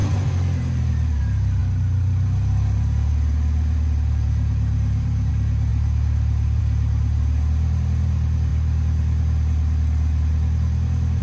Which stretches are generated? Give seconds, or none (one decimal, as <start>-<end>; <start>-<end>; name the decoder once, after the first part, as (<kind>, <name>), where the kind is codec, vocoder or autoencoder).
0.0-11.2 (vocoder, BigVGAN v2)

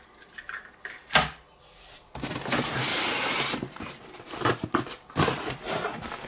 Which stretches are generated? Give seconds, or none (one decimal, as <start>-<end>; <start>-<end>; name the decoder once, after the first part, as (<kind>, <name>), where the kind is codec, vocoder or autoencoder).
2.9-4.6 (vocoder, BigVGAN v2)

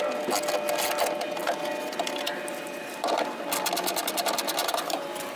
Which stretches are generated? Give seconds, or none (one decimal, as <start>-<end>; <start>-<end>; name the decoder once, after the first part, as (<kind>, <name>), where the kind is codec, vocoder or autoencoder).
2.3-3.4 (vocoder, BigVGAN v2); 4.6-5.4

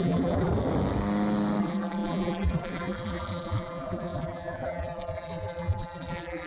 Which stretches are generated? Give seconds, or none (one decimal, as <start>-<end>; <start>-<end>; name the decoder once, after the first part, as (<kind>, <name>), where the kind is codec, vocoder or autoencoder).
0.0-0.5 (vocoder, BigVGAN v2); 1.6-6.5

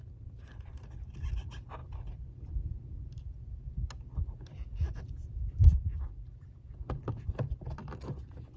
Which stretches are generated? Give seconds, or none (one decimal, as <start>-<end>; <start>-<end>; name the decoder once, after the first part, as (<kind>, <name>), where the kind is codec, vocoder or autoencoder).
none

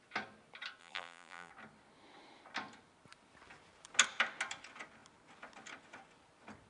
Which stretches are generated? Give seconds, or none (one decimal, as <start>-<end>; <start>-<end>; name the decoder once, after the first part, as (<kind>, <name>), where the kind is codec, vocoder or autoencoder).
0.8-1.5 (vocoder, BigVGAN v2)